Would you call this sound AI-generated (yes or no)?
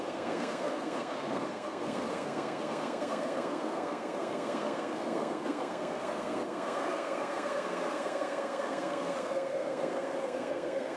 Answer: yes